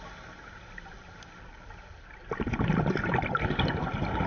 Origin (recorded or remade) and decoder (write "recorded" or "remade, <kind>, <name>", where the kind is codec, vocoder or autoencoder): recorded